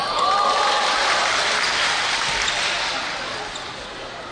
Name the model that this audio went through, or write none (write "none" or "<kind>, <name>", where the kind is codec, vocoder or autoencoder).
none